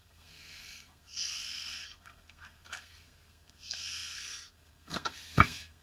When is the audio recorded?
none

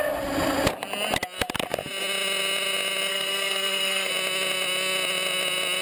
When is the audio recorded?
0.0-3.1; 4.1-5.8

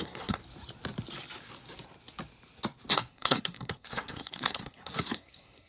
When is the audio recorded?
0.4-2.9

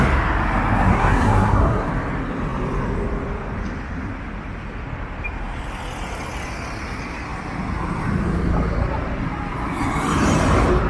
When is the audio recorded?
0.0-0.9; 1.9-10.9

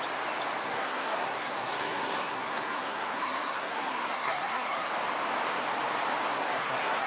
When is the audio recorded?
0.0-0.6; 4.9-6.4

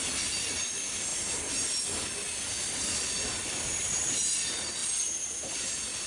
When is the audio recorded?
0.0-6.1